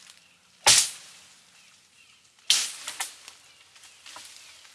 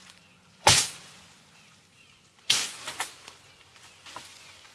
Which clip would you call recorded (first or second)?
first